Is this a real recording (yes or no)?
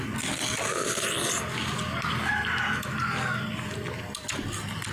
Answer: yes